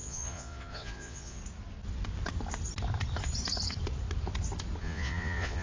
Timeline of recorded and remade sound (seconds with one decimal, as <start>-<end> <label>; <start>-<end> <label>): 0.0-1.4 remade; 1.4-4.8 recorded; 4.8-5.6 remade